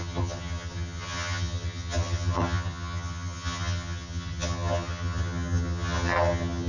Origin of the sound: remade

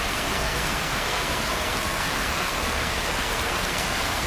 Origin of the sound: remade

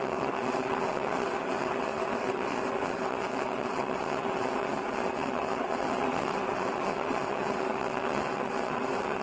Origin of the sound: remade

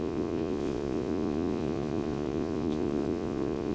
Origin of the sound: remade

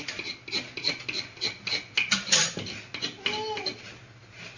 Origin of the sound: recorded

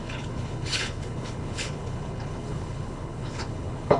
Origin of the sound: remade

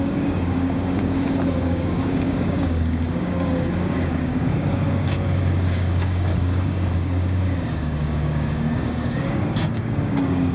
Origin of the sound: remade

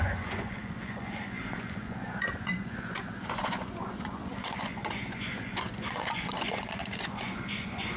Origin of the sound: remade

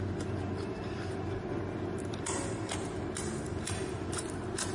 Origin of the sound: remade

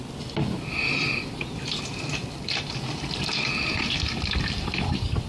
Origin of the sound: recorded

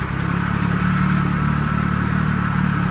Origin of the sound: recorded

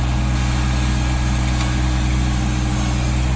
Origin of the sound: recorded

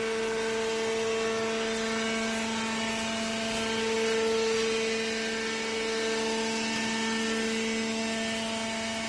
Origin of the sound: recorded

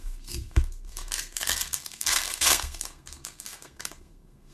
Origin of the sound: remade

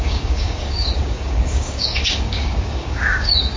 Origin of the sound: remade